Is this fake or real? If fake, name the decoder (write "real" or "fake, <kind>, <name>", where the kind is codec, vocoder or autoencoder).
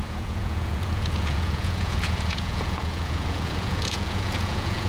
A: fake, vocoder, Vocos